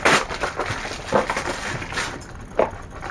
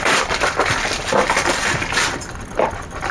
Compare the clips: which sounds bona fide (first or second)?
first